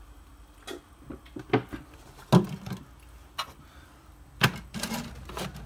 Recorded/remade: recorded